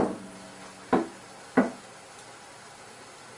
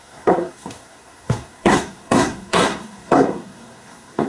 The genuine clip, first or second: first